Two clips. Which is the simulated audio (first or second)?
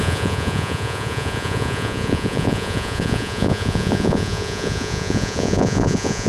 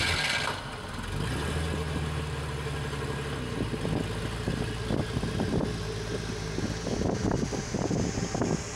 first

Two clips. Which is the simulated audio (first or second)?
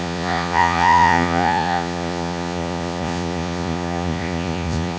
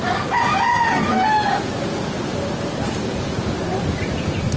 first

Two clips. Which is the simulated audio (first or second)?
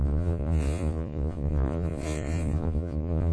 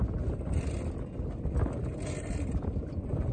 first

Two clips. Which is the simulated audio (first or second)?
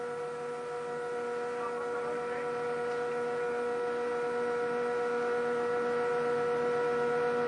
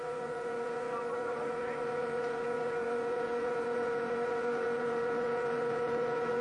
second